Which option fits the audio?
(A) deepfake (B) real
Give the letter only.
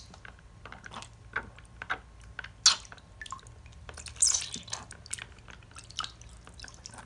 B